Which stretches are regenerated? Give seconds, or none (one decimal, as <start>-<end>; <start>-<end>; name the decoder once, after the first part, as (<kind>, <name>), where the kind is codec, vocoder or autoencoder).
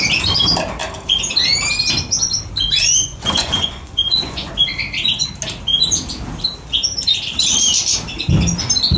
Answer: 3.1-4.5 (vocoder, Vocos)